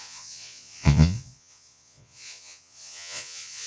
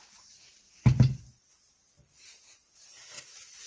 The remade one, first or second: first